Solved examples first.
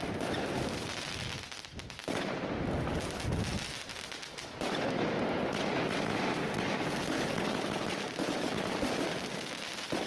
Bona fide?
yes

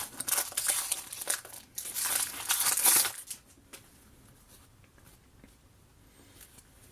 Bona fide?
yes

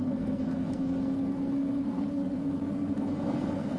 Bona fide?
no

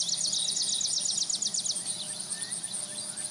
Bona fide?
yes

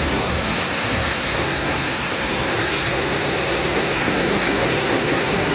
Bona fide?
no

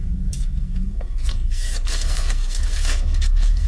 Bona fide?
no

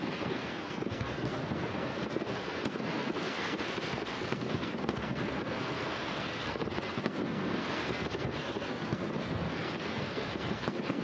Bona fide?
no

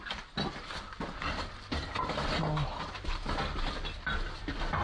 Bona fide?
yes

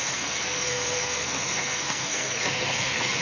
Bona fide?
no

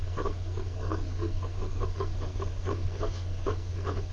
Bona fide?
no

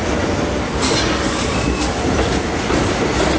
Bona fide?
yes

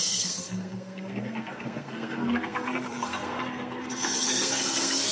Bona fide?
no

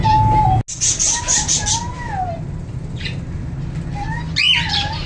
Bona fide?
yes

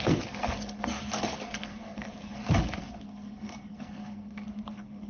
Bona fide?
no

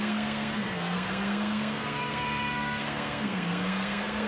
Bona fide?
no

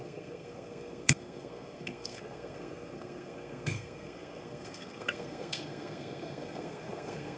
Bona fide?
no